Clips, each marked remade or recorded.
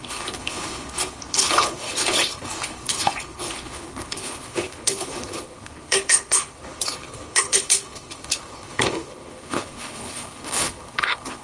remade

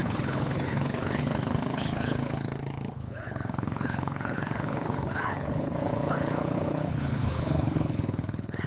remade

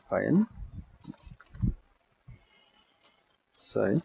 recorded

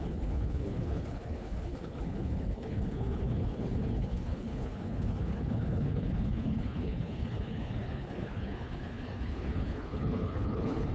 remade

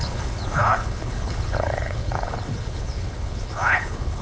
remade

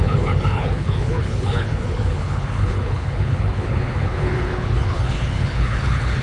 remade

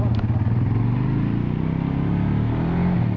recorded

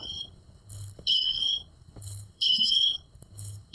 remade